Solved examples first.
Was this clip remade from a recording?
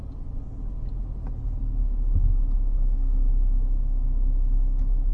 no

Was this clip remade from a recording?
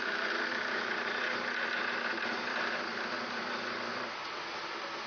yes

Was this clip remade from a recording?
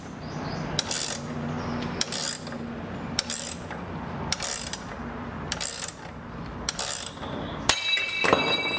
yes